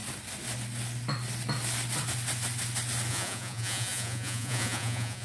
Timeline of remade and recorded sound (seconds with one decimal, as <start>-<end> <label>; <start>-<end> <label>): 0.0-3.1 recorded; 3.1-5.2 remade